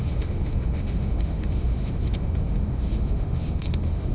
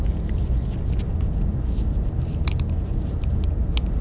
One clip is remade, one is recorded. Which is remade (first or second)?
first